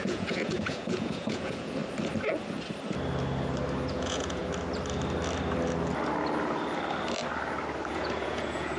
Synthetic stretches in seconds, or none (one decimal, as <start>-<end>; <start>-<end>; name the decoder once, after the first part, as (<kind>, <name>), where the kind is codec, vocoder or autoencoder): 0.0-1.8 (vocoder, Vocos); 3.9-4.4; 7.9-8.8

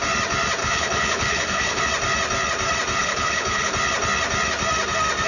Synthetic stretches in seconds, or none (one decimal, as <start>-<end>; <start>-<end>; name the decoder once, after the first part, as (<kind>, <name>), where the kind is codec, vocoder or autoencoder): 0.6-1.8 (codec, HILCodec); 3.0-3.7